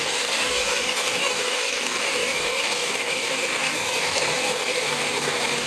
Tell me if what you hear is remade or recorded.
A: remade